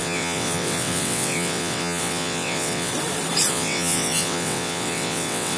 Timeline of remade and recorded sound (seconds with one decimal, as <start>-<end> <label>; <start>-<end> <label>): 0.0-2.9 remade; 2.9-3.5 recorded; 3.5-5.6 remade